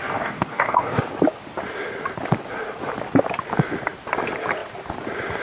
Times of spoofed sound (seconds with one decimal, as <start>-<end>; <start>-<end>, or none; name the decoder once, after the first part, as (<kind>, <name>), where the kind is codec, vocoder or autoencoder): 0.0-1.0 (codec, DAC)